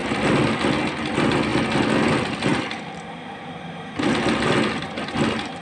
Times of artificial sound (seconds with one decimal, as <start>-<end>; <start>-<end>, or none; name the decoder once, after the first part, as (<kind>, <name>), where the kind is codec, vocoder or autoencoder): 0.0-0.5 (vocoder, BigVGAN v2); 1.5-2.1; 2.5-3.6